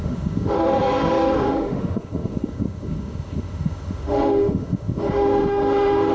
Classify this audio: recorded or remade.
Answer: remade